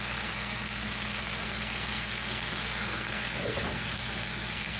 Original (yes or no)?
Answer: no